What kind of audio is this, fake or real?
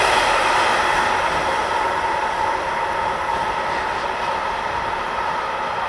real